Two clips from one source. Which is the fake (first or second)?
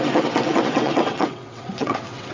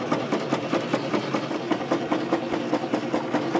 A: first